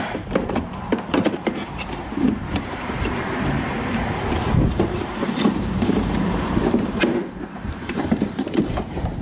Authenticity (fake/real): fake